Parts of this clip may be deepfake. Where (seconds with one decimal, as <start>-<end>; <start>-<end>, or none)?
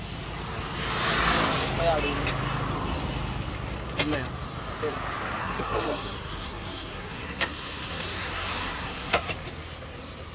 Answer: 5.4-9.3